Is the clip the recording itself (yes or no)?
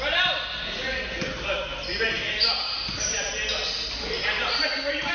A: yes